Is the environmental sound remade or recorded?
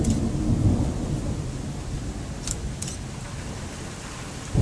recorded